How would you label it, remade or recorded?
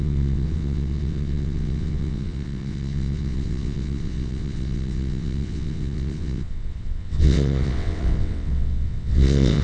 remade